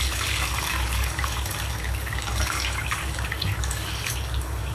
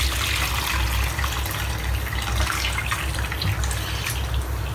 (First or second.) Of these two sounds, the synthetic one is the first